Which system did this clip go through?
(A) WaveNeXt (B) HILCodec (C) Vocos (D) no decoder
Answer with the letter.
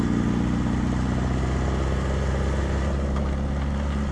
D